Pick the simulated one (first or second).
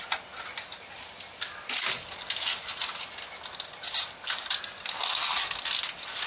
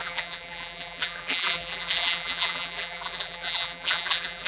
second